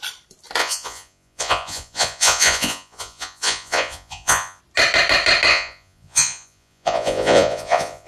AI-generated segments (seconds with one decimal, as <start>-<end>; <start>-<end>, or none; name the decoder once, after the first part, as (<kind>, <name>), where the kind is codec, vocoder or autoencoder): 0.6-4.6 (vocoder, Vocos); 5.5-8.1